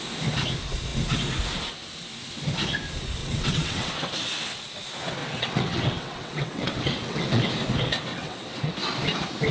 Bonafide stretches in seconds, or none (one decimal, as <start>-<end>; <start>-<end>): 0.0-3.2; 3.9-5.2; 7.5-8.1; 8.7-9.5